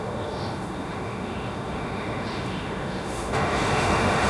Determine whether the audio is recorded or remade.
remade